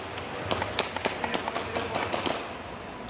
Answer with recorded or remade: recorded